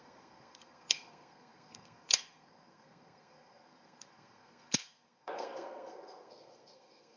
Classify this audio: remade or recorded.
remade